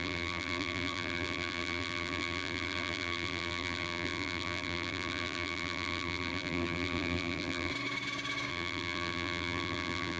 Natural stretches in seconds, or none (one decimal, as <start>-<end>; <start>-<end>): 7.7-8.5